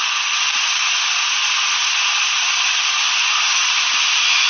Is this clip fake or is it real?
real